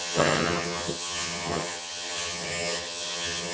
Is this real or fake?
fake